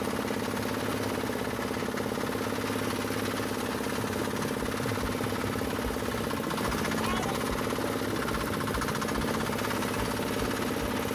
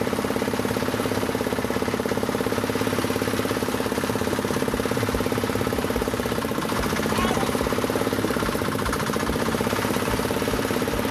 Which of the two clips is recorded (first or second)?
first